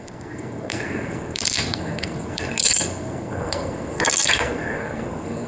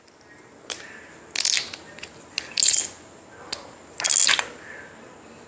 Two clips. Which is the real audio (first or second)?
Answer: second